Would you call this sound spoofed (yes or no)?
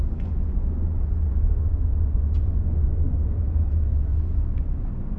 yes